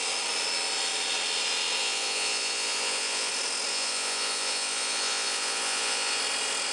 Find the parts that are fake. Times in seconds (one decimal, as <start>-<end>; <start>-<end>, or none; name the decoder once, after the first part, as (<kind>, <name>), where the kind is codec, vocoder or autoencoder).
1.8-3.3 (vocoder, Vocos); 3.7-6.2